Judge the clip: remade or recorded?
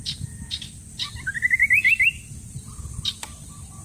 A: recorded